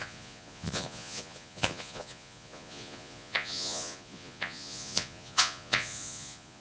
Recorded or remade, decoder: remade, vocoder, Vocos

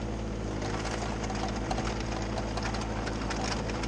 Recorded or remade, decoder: recorded